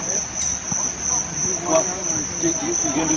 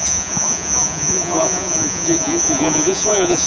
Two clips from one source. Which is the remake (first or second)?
second